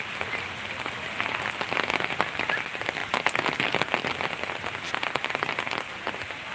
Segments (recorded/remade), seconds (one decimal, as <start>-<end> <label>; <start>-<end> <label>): 0.0-6.5 recorded